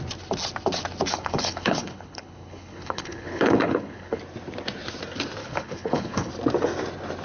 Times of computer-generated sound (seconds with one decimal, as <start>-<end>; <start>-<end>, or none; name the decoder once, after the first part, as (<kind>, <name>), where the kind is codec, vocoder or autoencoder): 1.1-4.2 (codec, HILCodec); 5.4-6.3